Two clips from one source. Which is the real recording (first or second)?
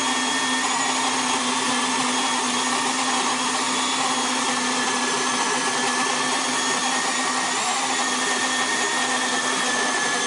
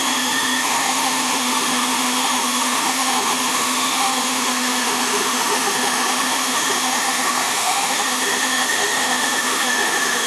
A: first